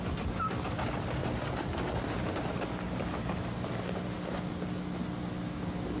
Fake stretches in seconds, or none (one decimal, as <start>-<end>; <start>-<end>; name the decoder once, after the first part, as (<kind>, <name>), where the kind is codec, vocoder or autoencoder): none

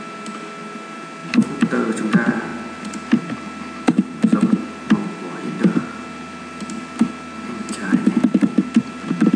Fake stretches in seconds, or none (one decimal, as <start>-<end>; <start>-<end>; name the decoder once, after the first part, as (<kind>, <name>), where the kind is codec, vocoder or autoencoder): none

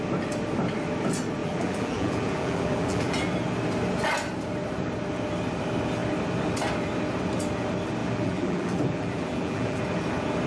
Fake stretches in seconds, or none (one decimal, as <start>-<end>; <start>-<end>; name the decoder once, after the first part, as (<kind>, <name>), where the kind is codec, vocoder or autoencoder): 1.4-3.3 (vocoder, BigVGAN v2); 8.0-9.8